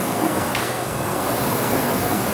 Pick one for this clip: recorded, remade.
remade